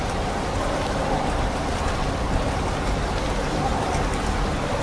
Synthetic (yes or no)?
no